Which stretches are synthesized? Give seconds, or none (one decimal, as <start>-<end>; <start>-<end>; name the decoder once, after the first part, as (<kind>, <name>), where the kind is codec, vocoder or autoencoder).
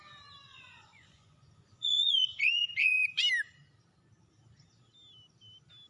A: 0.5-3.2 (vocoder, Vocos)